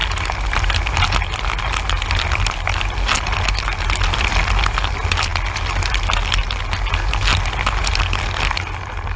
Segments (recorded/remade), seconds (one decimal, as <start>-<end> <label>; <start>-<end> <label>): 0.0-9.2 recorded